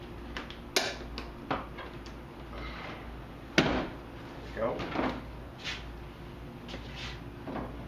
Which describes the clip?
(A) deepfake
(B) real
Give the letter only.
B